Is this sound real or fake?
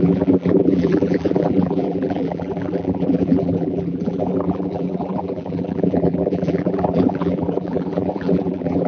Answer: fake